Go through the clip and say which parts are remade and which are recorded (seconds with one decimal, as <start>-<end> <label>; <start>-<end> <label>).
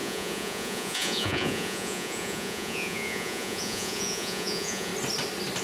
0.0-4.9 remade; 4.9-5.6 recorded